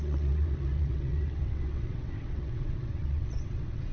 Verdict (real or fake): fake